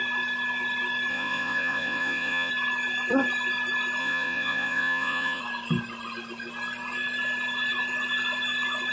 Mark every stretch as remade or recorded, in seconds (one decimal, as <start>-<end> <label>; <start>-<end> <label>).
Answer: 0.0-1.1 recorded; 1.1-2.5 remade; 2.5-4.0 recorded; 4.0-5.4 remade; 5.4-8.9 recorded